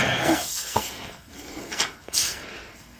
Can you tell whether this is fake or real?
fake